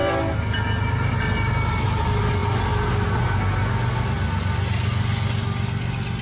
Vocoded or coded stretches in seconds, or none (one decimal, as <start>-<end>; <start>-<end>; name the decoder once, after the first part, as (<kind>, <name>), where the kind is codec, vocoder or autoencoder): none